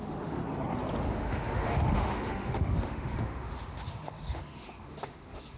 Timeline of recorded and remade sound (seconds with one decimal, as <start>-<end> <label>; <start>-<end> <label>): 0.0-0.4 remade; 0.4-1.0 recorded; 1.0-5.6 remade